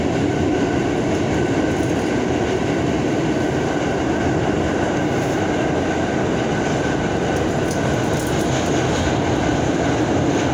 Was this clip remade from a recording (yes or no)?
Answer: no